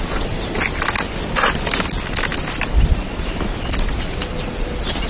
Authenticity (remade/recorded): recorded